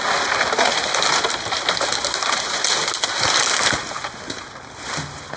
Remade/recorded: recorded